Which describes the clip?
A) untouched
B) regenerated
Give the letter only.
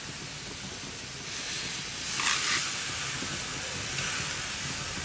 A